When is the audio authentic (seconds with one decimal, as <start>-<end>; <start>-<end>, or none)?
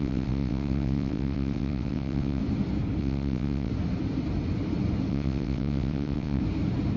2.4-3.0; 3.7-5.1; 6.4-7.0